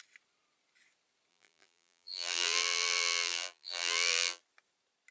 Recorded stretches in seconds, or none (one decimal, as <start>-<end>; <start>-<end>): 0.0-1.3; 4.4-5.1